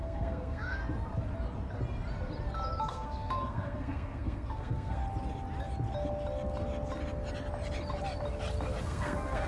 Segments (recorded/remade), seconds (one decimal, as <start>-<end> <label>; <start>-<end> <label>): 0.0-0.8 remade; 0.8-2.8 recorded; 2.8-5.0 remade; 5.0-8.8 recorded; 8.8-9.5 remade